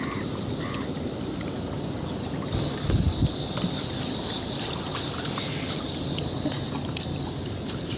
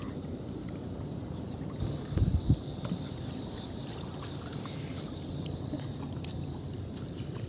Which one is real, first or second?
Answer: first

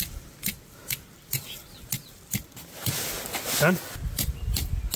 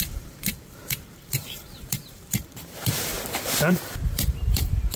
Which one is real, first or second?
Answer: first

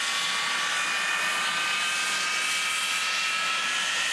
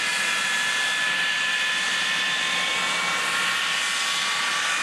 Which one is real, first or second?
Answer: first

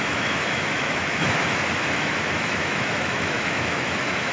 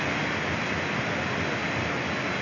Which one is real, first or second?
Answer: second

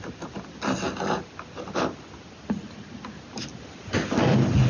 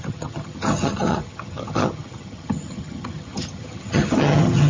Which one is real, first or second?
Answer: first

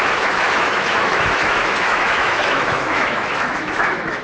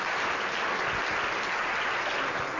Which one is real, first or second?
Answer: second